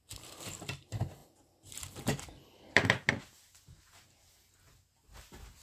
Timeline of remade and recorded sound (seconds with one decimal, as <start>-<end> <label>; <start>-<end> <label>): 0.0-5.6 recorded